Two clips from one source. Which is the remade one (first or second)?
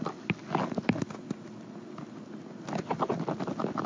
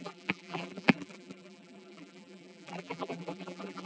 second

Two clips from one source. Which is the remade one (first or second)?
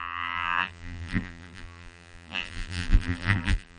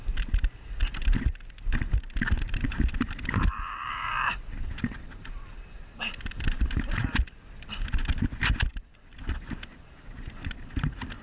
first